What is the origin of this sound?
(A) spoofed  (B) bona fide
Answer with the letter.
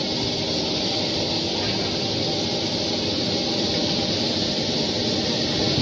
B